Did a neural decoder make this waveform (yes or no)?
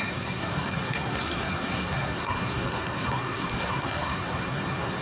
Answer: yes